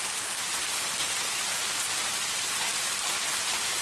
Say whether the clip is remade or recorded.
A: recorded